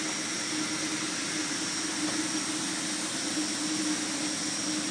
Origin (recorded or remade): recorded